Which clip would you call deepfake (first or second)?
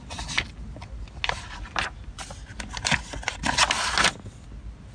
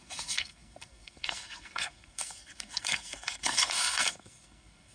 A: second